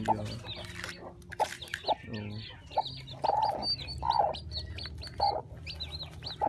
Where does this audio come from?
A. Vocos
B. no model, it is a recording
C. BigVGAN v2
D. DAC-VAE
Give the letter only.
B